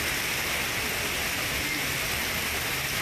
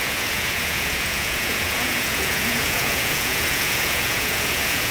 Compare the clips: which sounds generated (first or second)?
second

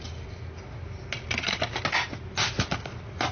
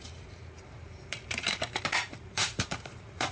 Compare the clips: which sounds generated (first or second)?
second